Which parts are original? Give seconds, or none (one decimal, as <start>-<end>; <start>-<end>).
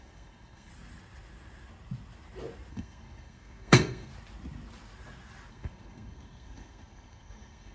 0.7-2.7; 4.1-5.5